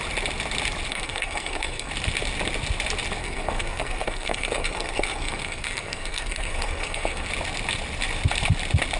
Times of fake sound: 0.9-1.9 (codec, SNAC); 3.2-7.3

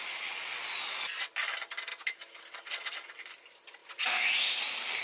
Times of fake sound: 1.9-2.4 (vocoder, BigVGAN v2); 3.8-5.0

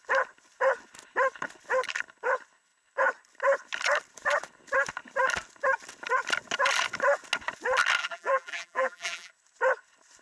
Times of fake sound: 8.0-9.3 (vocoder, BigVGAN v2)

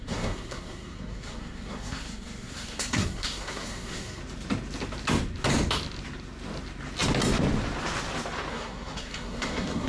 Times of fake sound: 0.0-4.2 (codec, SNAC); 8.5-9.9

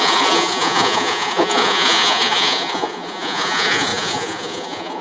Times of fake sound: 0.0-5.0 (vocoder, Vocos)

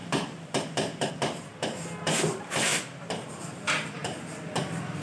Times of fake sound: 0.0-1.1 (vocoder, BigVGAN v2)

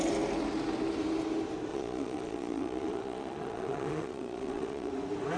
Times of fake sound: 1.7-4.9 (vocoder, Vocos)